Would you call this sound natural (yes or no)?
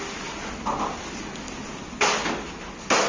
yes